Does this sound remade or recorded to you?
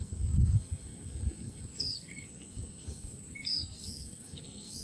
remade